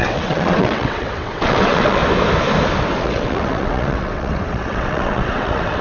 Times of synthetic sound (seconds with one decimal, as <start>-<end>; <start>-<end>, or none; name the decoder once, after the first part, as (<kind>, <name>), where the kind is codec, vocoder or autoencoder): 0.0-2.0 (vocoder, WaveNeXt); 3.0-5.8